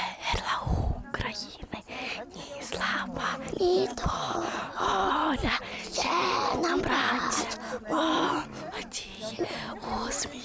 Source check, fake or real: real